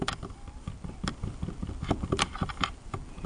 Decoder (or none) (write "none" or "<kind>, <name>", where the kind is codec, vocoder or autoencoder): none